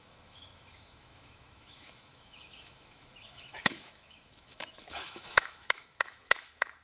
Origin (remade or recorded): remade